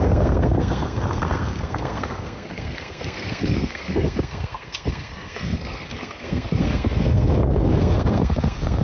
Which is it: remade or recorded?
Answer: remade